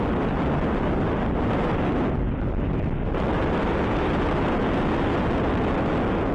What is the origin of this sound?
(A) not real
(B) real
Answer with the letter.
B